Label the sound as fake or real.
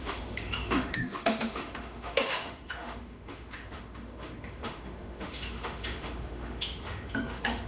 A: fake